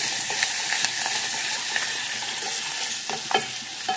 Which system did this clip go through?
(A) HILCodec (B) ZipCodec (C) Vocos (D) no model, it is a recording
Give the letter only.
D